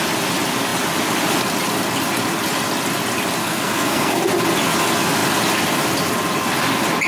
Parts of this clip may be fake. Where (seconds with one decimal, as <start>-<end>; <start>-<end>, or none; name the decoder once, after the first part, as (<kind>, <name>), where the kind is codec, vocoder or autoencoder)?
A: 3.4-4.2 (codec, SNAC)